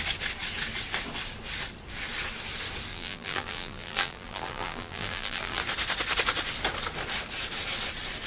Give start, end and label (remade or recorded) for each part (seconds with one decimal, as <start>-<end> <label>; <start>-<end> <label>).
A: 0.0-2.9 recorded; 2.9-5.6 remade; 5.6-8.3 recorded